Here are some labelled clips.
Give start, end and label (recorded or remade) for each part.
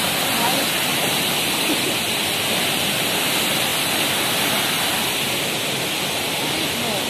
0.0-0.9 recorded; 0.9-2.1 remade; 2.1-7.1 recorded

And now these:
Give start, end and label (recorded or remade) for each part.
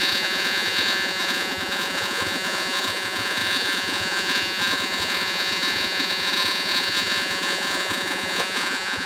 0.0-9.1 remade